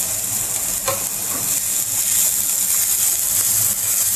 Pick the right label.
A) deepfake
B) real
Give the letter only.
B